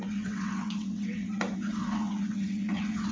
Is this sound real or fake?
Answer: fake